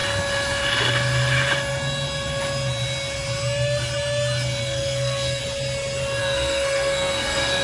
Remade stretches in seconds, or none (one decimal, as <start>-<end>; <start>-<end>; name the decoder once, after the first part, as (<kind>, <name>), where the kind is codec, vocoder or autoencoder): 4.6-5.4 (codec, SNAC); 6.2-7.6